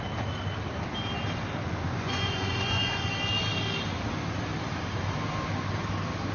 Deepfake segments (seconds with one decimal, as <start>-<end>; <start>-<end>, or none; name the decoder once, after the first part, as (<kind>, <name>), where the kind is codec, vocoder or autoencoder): 1.9-3.1 (vocoder, Vocos)